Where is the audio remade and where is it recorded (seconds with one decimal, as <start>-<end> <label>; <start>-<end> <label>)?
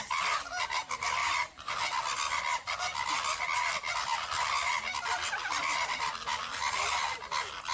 0.0-1.2 recorded; 1.2-1.7 remade; 1.7-7.7 recorded